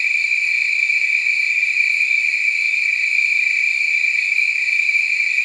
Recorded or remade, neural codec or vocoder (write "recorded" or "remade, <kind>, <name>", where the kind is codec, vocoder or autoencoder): recorded